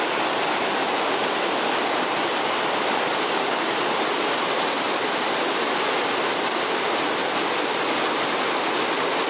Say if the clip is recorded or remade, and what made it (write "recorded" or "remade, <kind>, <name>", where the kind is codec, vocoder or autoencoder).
recorded